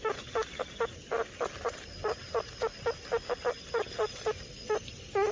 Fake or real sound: real